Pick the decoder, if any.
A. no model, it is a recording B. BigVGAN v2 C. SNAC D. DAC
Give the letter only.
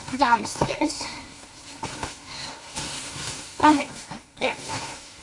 C